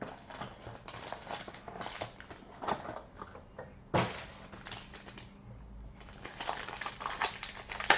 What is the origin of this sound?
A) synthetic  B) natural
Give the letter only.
B